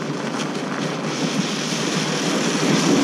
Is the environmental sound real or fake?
real